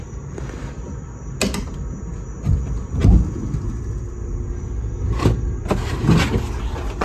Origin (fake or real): real